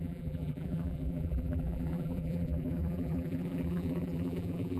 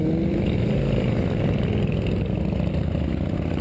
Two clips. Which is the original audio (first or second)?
second